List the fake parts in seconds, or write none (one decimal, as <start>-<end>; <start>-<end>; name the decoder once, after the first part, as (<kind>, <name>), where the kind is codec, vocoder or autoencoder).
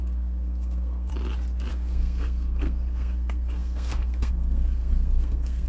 0.0-1.1 (codec, SNAC); 1.7-5.7